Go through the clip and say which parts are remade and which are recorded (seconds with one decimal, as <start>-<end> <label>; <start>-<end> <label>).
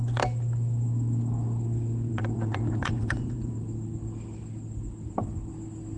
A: 0.0-2.1 recorded; 2.1-3.5 remade; 3.5-6.0 recorded